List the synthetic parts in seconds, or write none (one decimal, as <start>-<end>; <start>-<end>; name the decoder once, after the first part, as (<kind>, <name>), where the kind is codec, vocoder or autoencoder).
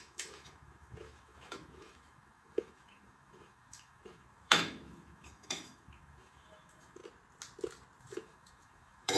0.0-7.0 (autoencoder, DAC-VAE); 8.0-9.2